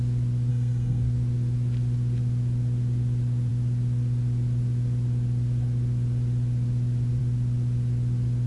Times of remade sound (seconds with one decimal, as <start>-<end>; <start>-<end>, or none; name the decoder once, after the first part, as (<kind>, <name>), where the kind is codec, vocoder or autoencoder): 0.5-1.0 (codec, SNAC)